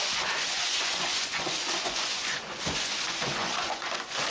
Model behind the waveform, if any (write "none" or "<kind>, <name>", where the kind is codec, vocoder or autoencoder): vocoder, Vocos